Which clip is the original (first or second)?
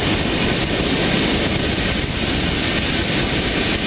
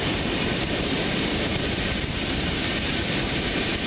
first